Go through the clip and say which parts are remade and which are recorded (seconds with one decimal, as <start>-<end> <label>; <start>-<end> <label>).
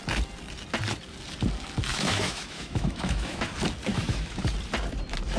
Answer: 0.0-1.9 recorded; 1.9-3.5 remade; 3.5-3.9 recorded; 3.9-4.4 remade; 4.4-5.4 recorded